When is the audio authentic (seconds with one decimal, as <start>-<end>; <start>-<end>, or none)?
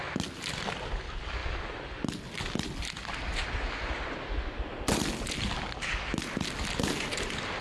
0.0-7.6